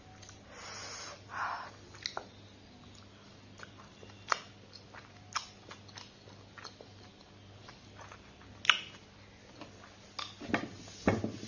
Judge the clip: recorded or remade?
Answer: recorded